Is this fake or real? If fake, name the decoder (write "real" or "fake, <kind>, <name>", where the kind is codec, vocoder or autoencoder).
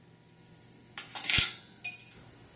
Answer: real